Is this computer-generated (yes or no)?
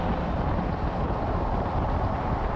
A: no